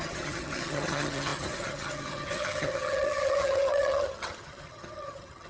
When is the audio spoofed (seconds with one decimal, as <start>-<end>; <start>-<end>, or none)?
0.0-5.5